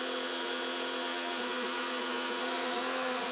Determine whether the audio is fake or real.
fake